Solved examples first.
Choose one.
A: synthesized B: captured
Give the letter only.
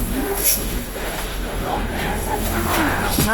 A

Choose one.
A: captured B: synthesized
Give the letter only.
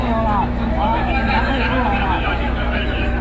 B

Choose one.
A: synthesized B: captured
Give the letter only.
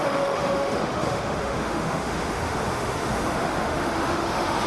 A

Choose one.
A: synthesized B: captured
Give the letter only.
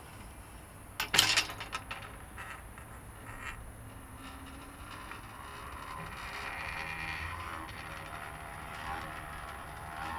B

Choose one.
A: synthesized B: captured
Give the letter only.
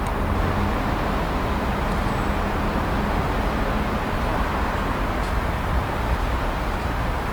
B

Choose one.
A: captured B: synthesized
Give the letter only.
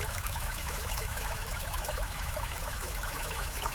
B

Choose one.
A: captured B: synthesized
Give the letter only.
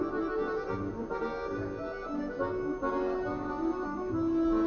A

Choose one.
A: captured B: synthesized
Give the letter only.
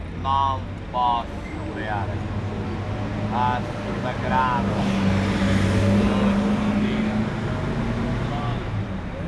A